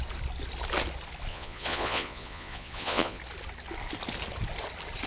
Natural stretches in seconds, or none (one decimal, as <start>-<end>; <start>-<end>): 0.0-1.3; 3.2-5.1